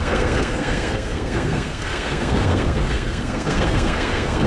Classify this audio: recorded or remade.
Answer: remade